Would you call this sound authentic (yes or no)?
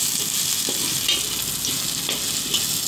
yes